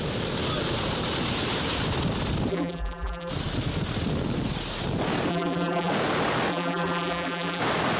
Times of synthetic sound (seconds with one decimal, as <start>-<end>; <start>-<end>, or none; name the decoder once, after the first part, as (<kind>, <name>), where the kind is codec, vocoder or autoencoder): 2.5-3.3 (vocoder, BigVGAN v2); 5.3-5.9; 6.5-7.6